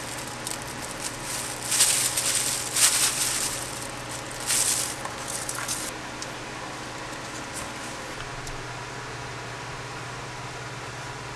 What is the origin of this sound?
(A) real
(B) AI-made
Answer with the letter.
A